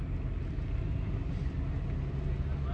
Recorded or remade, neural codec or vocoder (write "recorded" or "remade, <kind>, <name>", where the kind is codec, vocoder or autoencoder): recorded